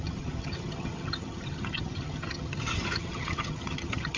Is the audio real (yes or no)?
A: no